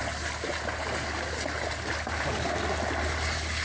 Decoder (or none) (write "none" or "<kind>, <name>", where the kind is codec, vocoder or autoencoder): none